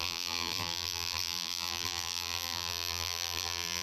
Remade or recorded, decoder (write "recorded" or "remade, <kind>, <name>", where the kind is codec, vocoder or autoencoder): remade, vocoder, BigVGAN v2